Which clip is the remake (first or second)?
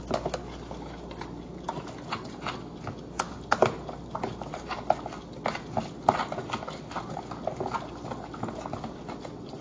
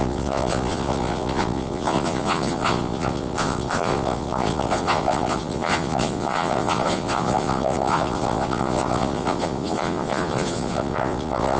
second